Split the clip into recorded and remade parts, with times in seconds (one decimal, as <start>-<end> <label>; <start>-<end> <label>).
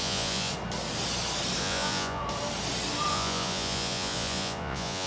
0.0-0.5 remade; 0.5-1.6 recorded; 1.6-2.2 remade; 2.2-3.1 recorded; 3.1-5.1 remade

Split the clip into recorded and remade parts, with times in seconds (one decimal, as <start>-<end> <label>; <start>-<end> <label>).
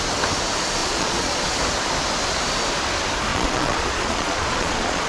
0.0-0.8 recorded; 0.8-1.5 remade; 1.5-3.3 recorded; 3.3-5.1 remade